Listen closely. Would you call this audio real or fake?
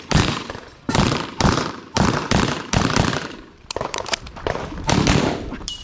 fake